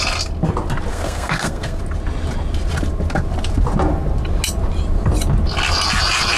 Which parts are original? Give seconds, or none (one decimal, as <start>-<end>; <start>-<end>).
0.0-0.9; 1.8-6.4